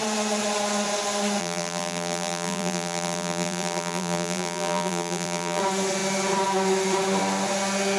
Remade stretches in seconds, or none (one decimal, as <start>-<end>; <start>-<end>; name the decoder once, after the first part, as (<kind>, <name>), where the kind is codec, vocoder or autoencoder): 1.4-5.6 (vocoder, BigVGAN v2)